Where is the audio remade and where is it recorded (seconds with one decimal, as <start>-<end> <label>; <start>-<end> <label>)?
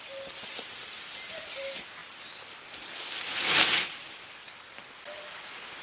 0.0-5.8 recorded